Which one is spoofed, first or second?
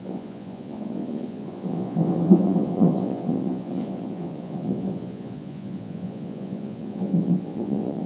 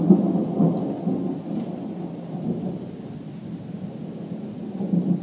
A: first